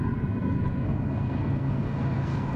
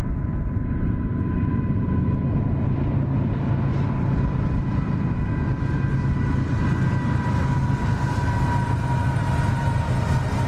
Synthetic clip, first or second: first